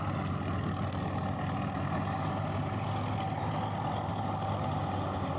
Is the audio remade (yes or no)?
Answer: no